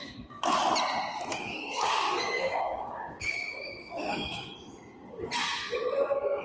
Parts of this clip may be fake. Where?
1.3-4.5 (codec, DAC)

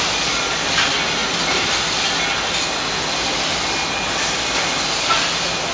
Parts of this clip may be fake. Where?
none